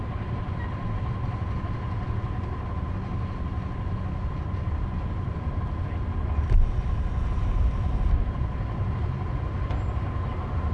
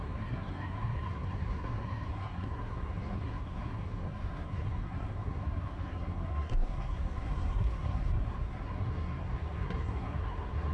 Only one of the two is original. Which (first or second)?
first